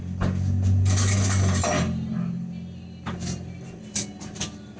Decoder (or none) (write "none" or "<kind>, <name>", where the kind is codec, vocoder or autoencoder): none